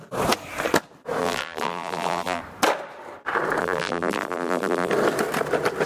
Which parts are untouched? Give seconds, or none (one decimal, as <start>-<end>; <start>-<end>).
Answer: 0.0-1.2; 2.4-3.6; 4.9-5.9